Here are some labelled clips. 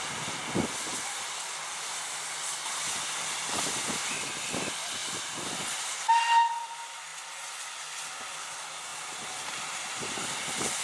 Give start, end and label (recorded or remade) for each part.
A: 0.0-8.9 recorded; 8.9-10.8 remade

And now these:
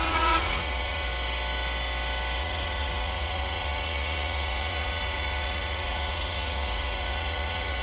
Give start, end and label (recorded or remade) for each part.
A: 0.0-1.1 remade; 1.1-2.4 recorded; 2.4-7.8 remade

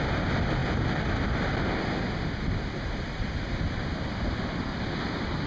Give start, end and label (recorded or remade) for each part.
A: 0.0-4.7 recorded; 4.7-5.5 remade

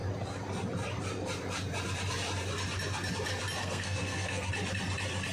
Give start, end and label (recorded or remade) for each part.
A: 0.0-3.6 recorded; 3.6-4.5 remade; 4.5-5.3 recorded

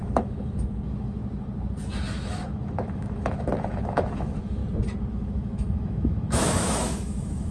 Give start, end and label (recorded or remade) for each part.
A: 0.0-1.2 remade; 1.2-2.1 recorded; 2.1-4.6 remade; 4.6-5.1 recorded; 5.1-7.5 remade

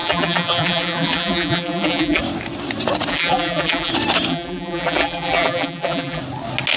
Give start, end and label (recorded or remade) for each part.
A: 0.0-2.2 remade; 2.2-3.1 recorded; 3.1-3.9 remade; 3.9-4.3 recorded; 4.3-6.2 remade; 6.2-6.8 recorded

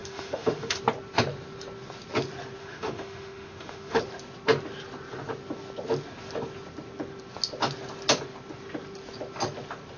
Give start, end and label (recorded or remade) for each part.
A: 0.0-0.8 remade; 0.8-2.6 recorded; 2.6-4.0 remade; 4.0-10.0 recorded

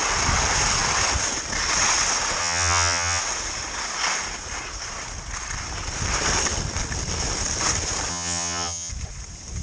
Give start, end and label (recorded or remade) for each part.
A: 0.0-2.4 recorded; 2.4-3.2 remade; 3.2-8.1 recorded; 8.1-8.9 remade; 8.9-9.6 recorded